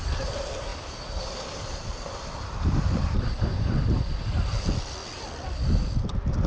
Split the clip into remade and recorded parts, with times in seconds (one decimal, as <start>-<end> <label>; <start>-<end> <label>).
0.0-0.7 recorded; 0.7-4.6 remade; 4.6-5.0 recorded; 5.0-5.8 remade; 5.8-6.5 recorded